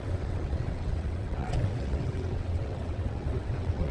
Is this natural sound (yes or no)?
no